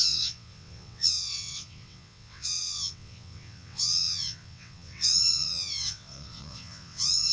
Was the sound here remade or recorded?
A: remade